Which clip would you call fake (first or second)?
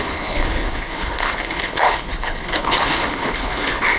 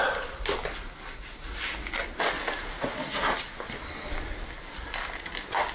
first